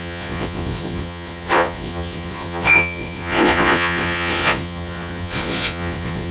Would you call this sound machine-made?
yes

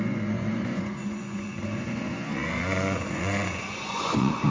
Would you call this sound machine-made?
yes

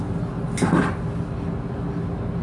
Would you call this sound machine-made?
no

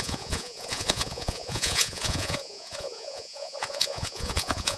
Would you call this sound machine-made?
yes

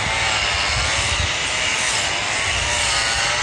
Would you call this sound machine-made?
no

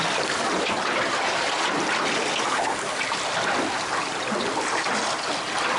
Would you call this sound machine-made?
no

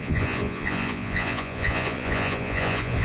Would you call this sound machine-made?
yes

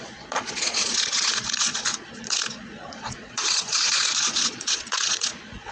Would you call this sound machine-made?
yes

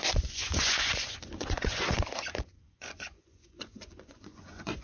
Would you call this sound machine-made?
yes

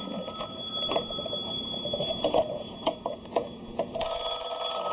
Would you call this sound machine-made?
yes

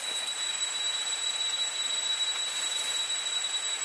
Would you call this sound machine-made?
no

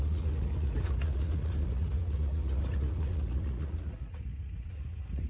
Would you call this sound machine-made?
yes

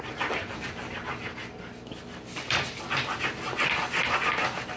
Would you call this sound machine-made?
no